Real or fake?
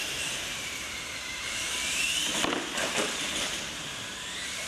fake